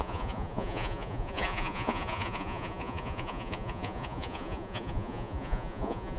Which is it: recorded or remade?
remade